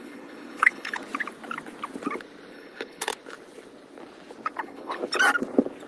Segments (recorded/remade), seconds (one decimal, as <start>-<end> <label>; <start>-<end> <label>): 0.0-1.0 remade; 1.0-2.5 recorded; 2.5-3.1 remade; 3.1-4.6 recorded; 4.6-5.0 remade; 5.0-5.9 recorded